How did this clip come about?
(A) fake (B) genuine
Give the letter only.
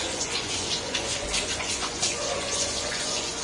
A